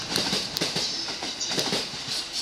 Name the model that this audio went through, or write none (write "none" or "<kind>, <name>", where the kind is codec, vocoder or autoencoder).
vocoder, BigVGAN v2